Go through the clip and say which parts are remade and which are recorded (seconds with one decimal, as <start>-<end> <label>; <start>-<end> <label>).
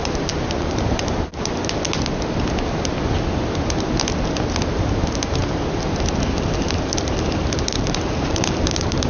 0.0-1.6 remade; 1.6-4.3 recorded; 4.3-9.1 remade